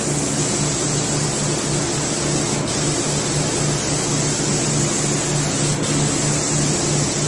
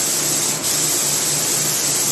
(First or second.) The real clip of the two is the first